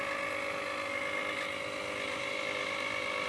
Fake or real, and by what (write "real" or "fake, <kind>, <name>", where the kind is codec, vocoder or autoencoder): real